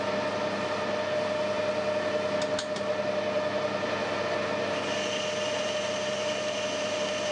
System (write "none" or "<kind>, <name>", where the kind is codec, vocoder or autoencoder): none